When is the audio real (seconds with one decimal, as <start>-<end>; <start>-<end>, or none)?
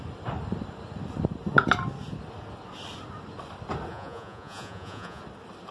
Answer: 0.0-3.9; 5.2-5.7